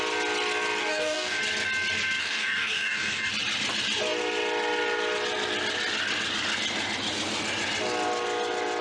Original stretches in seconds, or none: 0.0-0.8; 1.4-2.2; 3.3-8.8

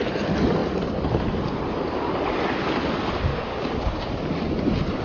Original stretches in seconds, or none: 0.0-3.3; 4.1-5.0

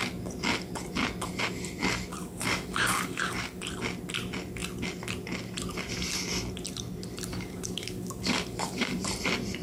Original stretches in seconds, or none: 0.0-2.1; 3.6-7.3; 9.1-9.6

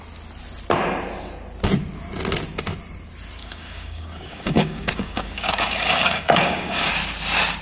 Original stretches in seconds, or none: 0.0-3.4; 6.9-7.6

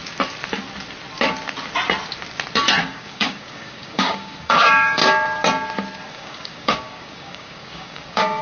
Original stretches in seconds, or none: 0.0-2.8; 5.0-6.1

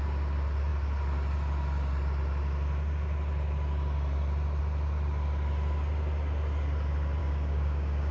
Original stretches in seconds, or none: 0.0-7.2